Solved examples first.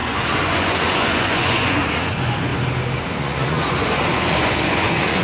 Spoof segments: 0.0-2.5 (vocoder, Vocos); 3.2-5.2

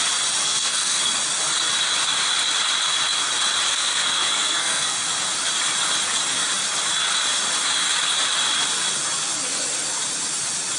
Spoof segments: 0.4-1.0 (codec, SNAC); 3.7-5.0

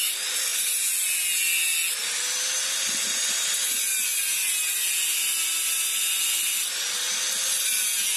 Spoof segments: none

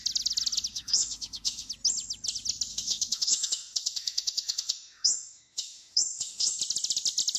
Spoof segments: 0.7-1.7 (autoencoder, DAC-VAE); 2.7-6.6

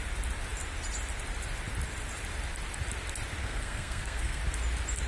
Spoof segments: 3.4-4.4 (codec, SNAC)

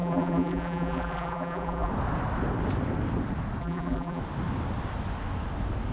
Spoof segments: 0.0-1.9 (vocoder, BigVGAN v2); 3.6-4.2

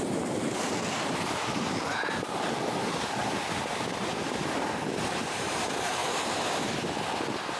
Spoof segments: 4.1-5.1 (vocoder, BigVGAN v2)